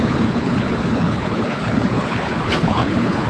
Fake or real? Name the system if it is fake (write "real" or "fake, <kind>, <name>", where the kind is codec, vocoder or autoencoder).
fake, codec, HILCodec